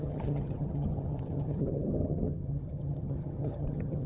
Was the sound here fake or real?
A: fake